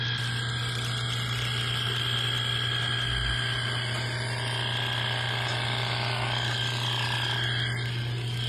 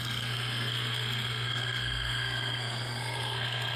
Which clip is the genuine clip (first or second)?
first